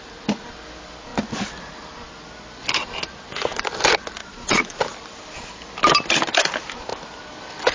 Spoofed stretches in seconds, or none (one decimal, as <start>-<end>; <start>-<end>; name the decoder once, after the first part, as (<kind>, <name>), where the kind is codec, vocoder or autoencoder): 4.2-4.8 (vocoder, Vocos)